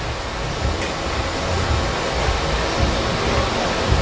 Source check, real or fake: real